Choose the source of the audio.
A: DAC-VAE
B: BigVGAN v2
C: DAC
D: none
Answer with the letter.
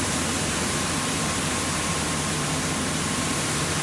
B